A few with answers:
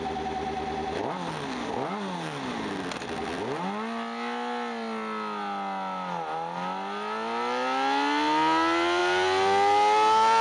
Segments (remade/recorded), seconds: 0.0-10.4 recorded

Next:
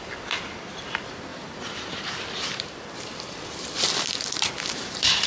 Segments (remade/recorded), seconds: 0.0-5.3 remade

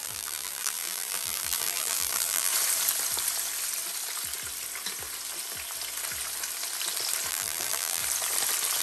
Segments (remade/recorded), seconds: 0.0-2.5 remade; 2.5-7.3 recorded; 7.3-8.0 remade; 8.0-8.8 recorded

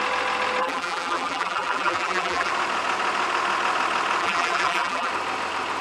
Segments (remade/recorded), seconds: 0.0-0.6 recorded; 0.6-2.5 remade; 2.5-4.2 recorded; 4.2-5.1 remade; 5.1-5.8 recorded

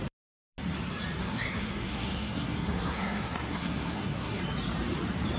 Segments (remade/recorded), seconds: 0.0-1.2 recorded; 1.2-4.4 remade; 4.4-5.4 recorded

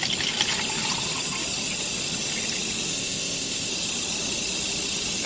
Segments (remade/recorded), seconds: 0.0-2.9 recorded; 2.9-3.7 remade; 3.7-5.3 recorded